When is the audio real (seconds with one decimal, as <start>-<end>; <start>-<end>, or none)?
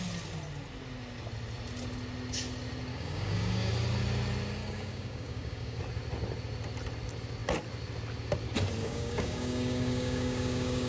0.0-2.9; 3.7-4.6; 5.8-8.8